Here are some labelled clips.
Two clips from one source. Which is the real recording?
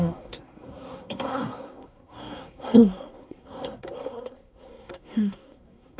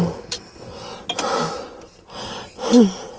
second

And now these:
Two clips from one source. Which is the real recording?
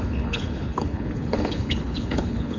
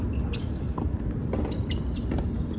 second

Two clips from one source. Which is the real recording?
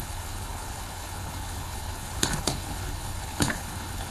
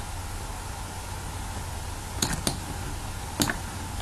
second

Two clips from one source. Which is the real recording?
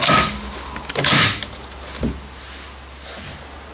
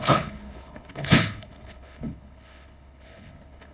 first